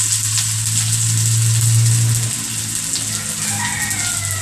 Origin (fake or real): real